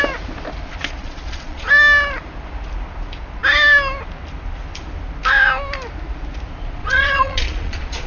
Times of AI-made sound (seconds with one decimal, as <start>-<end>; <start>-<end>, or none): 1.0-1.7; 6.8-8.1

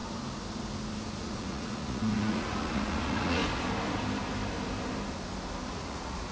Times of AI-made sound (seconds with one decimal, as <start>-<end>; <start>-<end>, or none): 1.2-3.4; 5.7-6.3

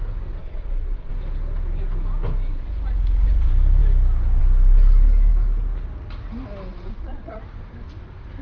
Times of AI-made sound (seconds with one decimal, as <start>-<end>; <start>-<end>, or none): 0.4-1.1; 6.7-7.4

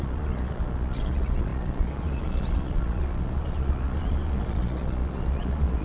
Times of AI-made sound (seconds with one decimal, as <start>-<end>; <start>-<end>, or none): 0.0-5.8

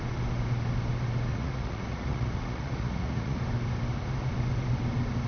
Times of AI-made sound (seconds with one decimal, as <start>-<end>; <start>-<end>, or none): 1.3-3.4

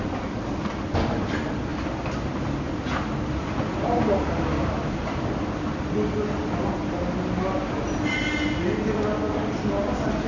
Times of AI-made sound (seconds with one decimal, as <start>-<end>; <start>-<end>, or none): none

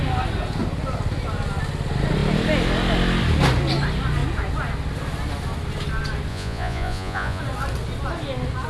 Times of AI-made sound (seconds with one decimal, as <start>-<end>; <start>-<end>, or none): 6.3-7.4

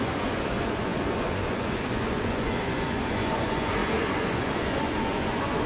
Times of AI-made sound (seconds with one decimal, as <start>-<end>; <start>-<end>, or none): 0.0-5.7